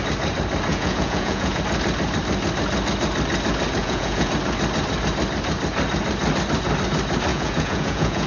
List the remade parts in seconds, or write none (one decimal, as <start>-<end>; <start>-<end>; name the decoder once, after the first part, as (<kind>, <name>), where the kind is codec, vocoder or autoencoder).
0.7-1.6 (vocoder, Vocos); 3.8-4.3; 7.3-8.3